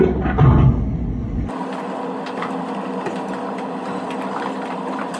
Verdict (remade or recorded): recorded